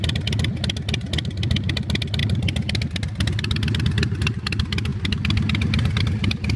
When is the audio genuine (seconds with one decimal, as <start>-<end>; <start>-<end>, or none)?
0.0-6.6